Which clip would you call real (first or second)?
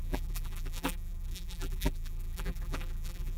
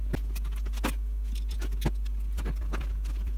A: second